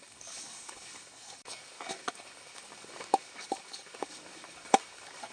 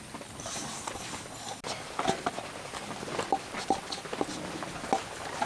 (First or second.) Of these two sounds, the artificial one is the first